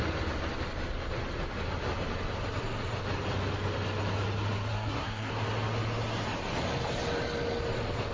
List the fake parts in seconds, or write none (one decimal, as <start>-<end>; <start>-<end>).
4.7-5.3